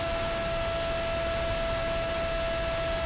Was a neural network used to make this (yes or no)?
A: no